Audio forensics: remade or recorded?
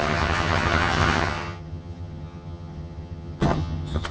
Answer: remade